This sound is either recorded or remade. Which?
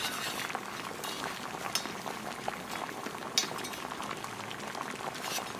recorded